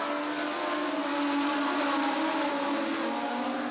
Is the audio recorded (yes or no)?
yes